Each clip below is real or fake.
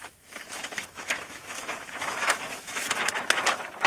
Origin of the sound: fake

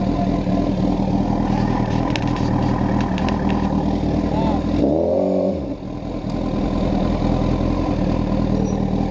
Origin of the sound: real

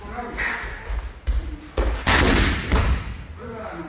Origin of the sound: real